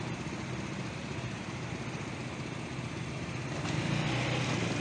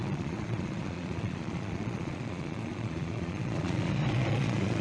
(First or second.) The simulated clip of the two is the second